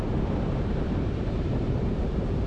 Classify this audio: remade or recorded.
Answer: remade